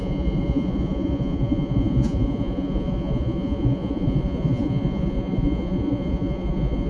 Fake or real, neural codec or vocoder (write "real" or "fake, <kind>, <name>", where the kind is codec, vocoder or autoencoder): fake, vocoder, Vocos